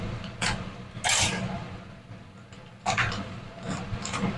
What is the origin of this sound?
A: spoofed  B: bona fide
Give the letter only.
B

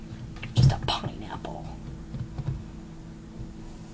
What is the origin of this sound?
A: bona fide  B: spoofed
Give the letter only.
A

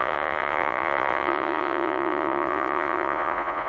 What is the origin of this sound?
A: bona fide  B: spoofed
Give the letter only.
B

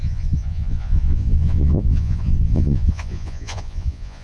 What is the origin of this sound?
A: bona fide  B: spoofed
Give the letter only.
B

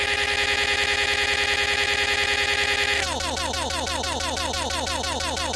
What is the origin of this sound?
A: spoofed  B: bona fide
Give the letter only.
B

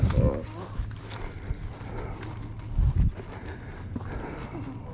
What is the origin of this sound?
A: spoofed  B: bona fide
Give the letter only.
B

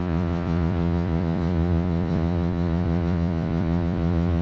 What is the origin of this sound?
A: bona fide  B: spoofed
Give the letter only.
B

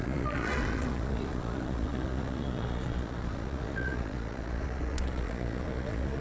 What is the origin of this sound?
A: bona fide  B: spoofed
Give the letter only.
B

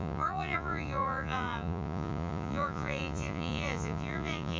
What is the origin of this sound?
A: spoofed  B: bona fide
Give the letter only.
A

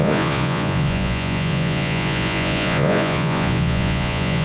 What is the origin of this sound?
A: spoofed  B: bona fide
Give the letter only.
A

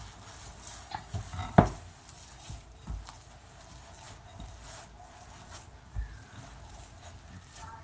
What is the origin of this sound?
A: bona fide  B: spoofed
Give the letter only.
A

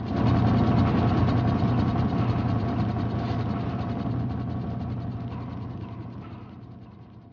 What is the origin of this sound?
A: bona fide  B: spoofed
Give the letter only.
A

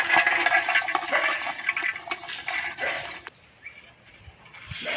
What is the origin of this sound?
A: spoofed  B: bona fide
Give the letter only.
B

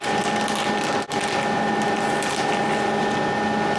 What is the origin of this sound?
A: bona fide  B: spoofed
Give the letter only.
A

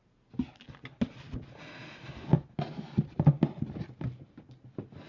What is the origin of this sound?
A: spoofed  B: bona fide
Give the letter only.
B